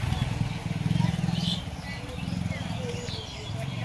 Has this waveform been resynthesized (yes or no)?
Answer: no